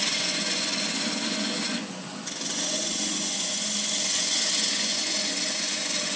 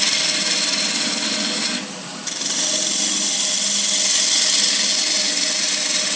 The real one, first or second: second